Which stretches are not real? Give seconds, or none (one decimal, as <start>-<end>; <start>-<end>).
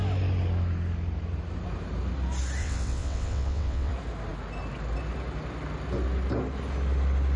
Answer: 2.6-3.9